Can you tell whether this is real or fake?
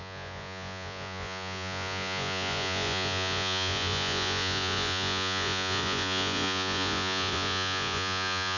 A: fake